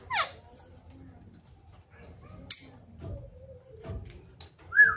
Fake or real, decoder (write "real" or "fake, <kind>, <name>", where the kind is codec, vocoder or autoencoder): real